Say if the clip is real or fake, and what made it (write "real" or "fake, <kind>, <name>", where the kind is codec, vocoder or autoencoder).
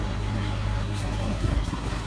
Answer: fake, codec, SNAC